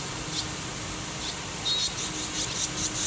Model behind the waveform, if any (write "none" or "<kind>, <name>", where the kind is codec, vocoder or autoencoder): none